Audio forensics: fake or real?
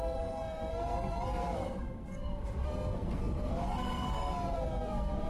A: fake